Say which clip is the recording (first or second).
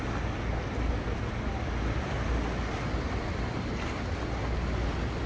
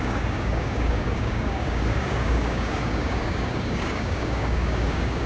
first